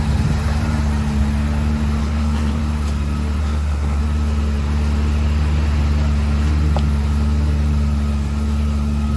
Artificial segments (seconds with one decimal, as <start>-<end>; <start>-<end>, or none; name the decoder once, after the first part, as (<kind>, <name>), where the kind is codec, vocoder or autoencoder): 2.0-2.6 (codec, SNAC); 3.4-4.0